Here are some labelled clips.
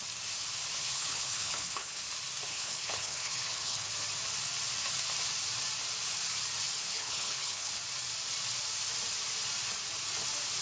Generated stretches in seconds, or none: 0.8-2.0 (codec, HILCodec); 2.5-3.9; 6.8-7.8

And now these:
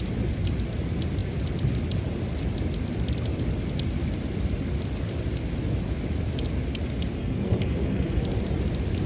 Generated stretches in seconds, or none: 7.2-8.2 (codec, SNAC)

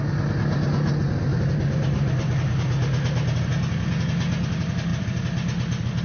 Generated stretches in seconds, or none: 1.3-3.5 (vocoder, BigVGAN v2); 4.9-6.0